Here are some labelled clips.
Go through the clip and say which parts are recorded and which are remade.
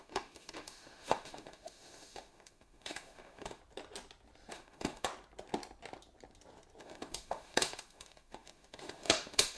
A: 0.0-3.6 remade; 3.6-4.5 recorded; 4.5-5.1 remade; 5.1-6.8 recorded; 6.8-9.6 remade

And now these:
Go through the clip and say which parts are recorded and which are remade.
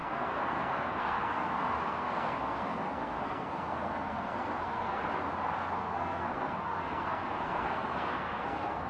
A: 0.0-5.0 remade; 5.0-5.6 recorded; 5.6-8.9 remade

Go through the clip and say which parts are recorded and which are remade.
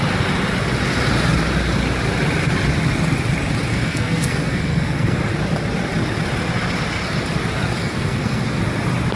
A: 0.0-3.7 recorded; 3.7-5.2 remade; 5.2-7.8 recorded; 7.8-8.6 remade; 8.6-9.2 recorded